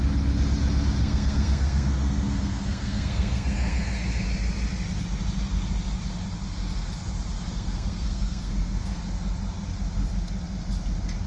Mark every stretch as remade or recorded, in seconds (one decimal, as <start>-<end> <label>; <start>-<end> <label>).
0.0-1.0 recorded; 1.0-4.0 remade; 4.0-7.5 recorded; 7.5-9.0 remade; 9.0-11.3 recorded